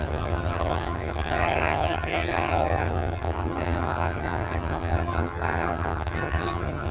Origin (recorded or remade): remade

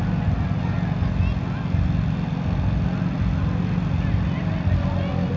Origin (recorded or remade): recorded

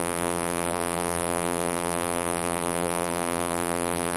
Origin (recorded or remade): remade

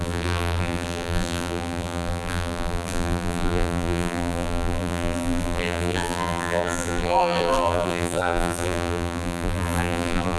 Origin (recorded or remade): remade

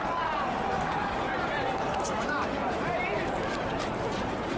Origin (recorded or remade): remade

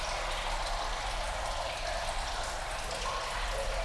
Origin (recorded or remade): recorded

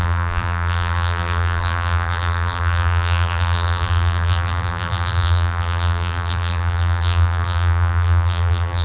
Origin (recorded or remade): remade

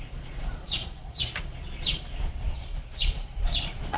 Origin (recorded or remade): remade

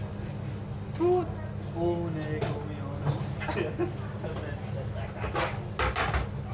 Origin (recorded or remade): recorded